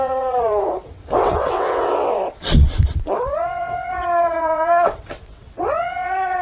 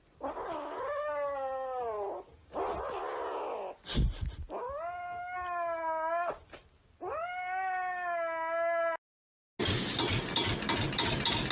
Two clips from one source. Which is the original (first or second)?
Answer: second